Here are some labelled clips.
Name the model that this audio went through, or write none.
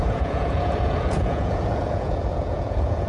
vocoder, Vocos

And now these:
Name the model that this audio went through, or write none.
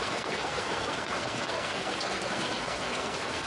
codec, SNAC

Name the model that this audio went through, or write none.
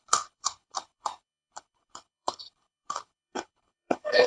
codec, HILCodec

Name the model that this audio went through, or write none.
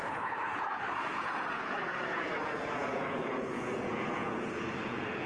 vocoder, Vocos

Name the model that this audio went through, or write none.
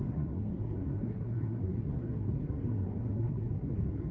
codec, SNAC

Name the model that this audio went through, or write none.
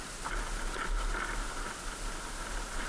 none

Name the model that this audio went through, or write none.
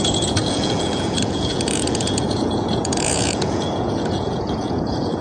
vocoder, Vocos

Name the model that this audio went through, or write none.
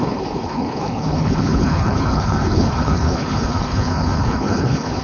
codec, HILCodec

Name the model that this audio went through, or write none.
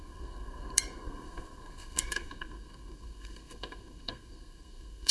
codec, SNAC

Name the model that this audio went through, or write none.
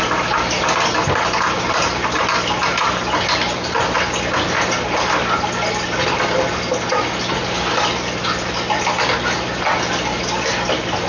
none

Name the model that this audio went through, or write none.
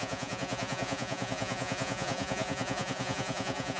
vocoder, Vocos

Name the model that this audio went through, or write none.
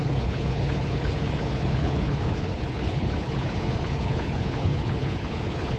codec, HILCodec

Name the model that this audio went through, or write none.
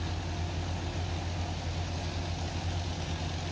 none